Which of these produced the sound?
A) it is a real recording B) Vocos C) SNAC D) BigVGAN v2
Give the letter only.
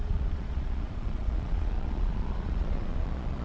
B